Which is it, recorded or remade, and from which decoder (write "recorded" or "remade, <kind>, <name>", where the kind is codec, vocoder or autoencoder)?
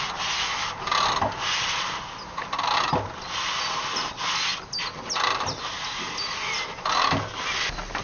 recorded